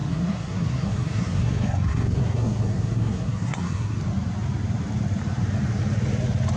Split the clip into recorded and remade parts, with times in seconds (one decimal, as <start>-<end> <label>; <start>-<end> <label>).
0.0-4.0 remade; 4.0-6.6 recorded